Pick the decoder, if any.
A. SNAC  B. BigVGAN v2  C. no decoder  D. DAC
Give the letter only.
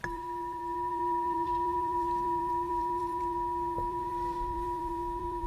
B